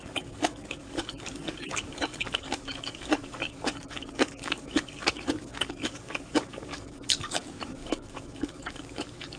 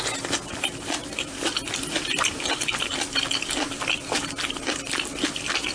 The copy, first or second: first